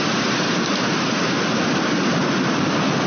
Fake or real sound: real